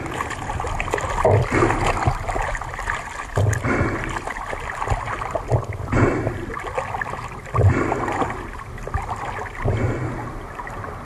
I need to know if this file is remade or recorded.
recorded